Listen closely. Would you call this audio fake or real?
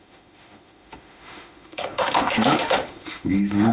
fake